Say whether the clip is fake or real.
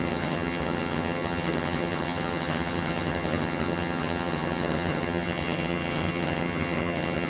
fake